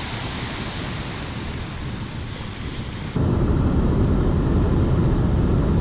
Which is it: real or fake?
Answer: real